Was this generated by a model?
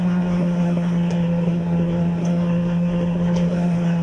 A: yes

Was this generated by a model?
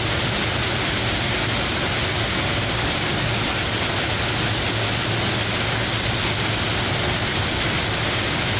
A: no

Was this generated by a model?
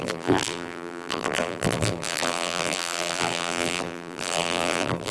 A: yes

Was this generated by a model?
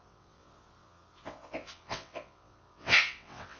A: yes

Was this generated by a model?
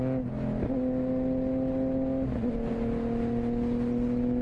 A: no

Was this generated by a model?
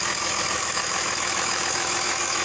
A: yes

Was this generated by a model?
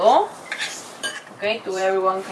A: yes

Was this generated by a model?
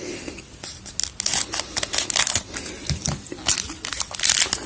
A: no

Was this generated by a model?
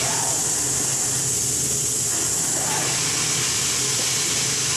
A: no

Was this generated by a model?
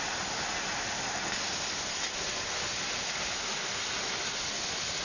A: no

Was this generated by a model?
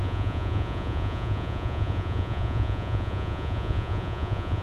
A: yes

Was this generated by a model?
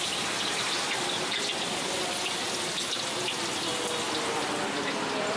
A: no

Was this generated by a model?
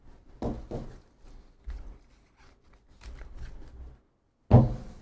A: no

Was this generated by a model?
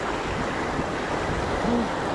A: no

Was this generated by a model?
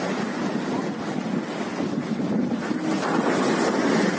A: no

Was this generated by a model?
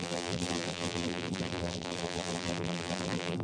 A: yes